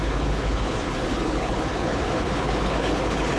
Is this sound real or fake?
fake